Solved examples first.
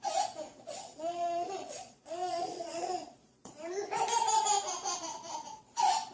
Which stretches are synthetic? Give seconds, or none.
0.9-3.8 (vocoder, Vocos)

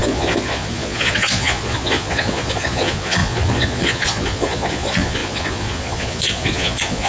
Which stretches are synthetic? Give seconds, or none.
0.0-7.1 (vocoder, Vocos)

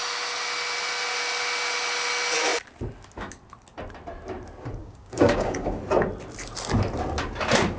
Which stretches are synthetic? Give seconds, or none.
4.8-5.8 (codec, DAC)

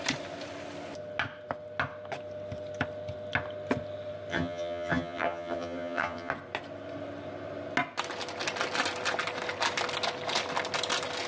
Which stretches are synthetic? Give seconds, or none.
4.3-6.3 (vocoder, HiFi-GAN)

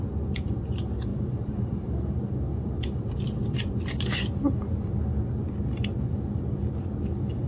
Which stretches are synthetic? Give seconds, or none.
1.1-2.1 (vocoder, BigVGAN v2); 2.5-4.3

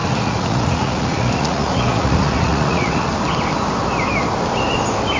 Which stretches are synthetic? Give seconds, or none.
0.0-3.1 (vocoder, Vocos)